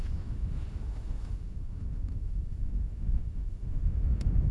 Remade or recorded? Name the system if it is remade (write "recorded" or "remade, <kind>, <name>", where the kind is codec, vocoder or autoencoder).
remade, autoencoder, DAC-VAE